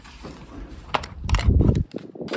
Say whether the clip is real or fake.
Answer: fake